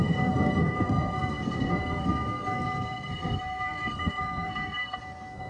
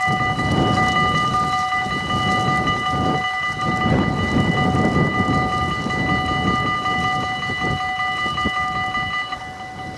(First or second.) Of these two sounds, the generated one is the first